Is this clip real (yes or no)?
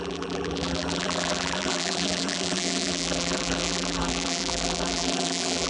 no